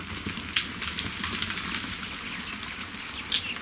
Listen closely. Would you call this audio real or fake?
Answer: real